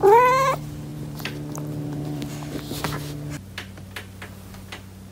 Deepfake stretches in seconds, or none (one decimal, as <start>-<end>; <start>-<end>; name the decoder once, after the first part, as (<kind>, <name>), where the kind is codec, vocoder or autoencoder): 0.9-2.3 (vocoder, BigVGAN v2)